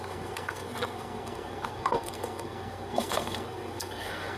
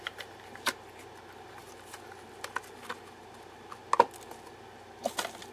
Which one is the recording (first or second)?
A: second